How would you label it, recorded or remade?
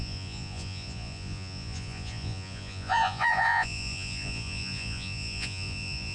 remade